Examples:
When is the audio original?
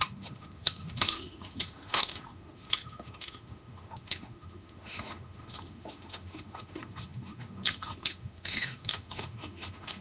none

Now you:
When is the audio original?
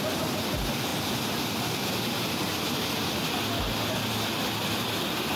0.0-5.4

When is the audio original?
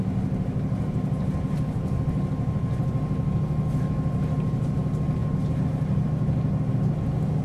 0.0-7.4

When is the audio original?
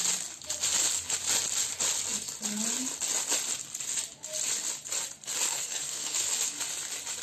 0.0-5.5; 6.2-7.2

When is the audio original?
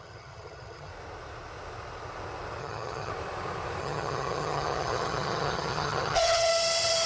0.9-2.6; 3.1-3.8; 6.5-7.1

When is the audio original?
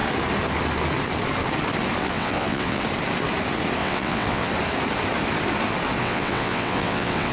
0.0-2.0; 2.8-3.8; 4.5-6.0